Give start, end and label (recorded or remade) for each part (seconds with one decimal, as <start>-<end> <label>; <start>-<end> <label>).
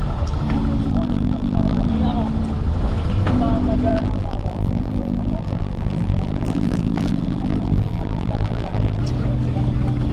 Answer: 0.0-0.9 recorded; 0.9-1.9 remade; 1.9-3.9 recorded; 3.9-9.0 remade; 9.0-10.1 recorded